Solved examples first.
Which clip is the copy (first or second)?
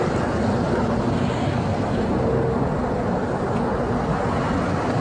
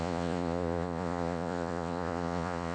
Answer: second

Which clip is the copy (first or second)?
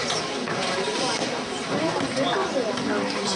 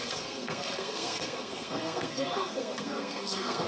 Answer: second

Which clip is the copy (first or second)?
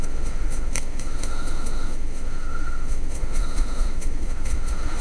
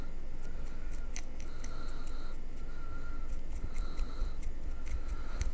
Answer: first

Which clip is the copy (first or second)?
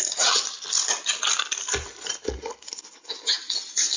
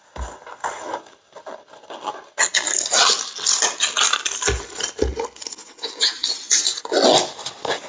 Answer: first